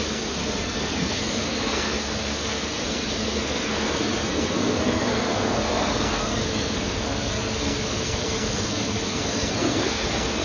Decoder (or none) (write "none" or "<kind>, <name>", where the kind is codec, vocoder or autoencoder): codec, SNAC